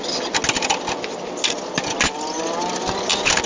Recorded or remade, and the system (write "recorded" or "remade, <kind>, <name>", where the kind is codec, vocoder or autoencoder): recorded